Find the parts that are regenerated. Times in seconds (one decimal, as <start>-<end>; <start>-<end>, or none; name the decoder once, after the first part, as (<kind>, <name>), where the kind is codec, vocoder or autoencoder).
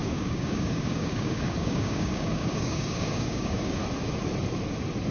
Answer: 0.0-3.8 (codec, DAC)